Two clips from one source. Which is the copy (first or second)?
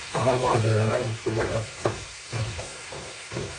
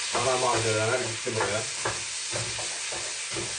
first